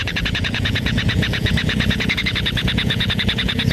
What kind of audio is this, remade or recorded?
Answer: remade